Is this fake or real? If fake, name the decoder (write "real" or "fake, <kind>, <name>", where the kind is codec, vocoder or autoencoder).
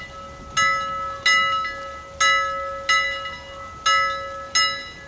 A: real